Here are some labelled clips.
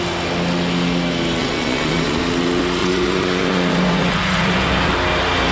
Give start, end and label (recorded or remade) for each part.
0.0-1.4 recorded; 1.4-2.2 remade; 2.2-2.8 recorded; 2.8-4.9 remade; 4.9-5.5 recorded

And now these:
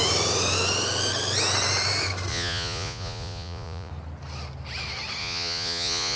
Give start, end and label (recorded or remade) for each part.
0.0-2.3 recorded; 2.3-3.9 remade; 3.9-5.2 recorded; 5.2-6.2 remade